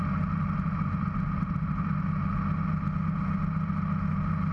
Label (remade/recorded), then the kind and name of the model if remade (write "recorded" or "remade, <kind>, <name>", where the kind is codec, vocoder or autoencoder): recorded